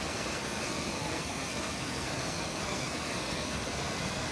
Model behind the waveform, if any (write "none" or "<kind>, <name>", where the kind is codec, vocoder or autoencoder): codec, SNAC